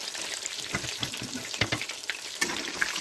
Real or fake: fake